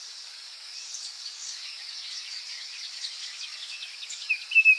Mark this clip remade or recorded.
remade